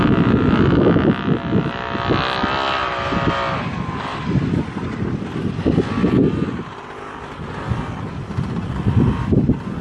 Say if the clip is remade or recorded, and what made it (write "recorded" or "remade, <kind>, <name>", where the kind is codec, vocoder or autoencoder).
recorded